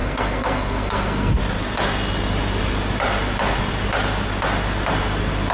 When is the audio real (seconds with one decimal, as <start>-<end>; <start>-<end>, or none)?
1.4-5.5